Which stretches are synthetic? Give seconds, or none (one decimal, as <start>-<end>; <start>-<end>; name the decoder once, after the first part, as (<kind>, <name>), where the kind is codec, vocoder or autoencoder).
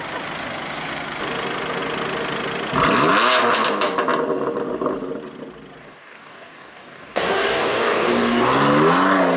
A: 5.8-8.4 (codec, DAC)